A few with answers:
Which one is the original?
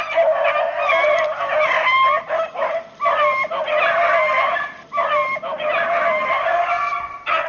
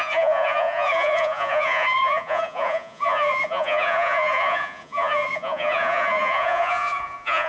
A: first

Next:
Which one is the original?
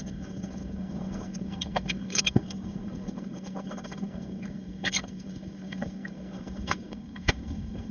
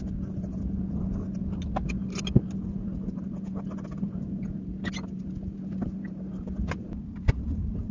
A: second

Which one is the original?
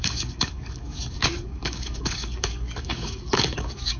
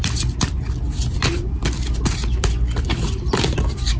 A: second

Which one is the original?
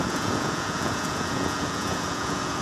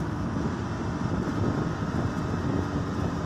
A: second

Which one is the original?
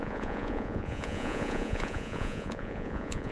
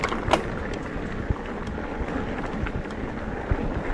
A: second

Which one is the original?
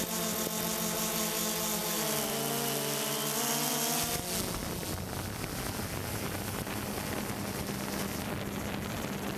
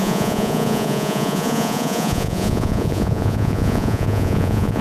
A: first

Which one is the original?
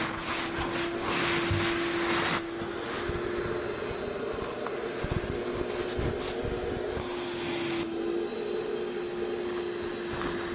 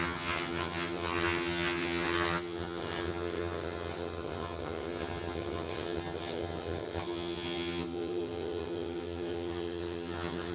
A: first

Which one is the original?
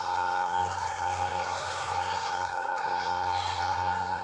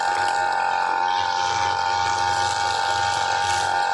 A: second